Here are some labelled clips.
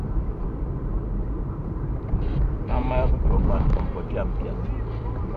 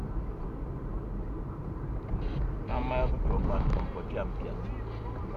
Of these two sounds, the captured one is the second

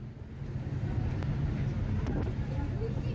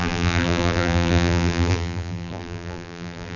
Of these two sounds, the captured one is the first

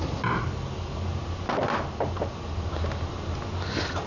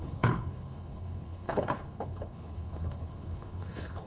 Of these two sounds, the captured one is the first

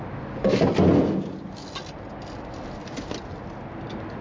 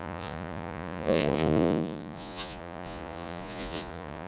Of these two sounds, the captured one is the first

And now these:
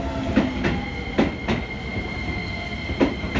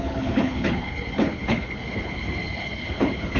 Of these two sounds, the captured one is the first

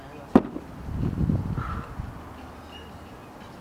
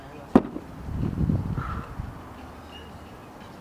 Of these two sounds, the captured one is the first